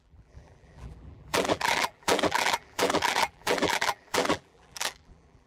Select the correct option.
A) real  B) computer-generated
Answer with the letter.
B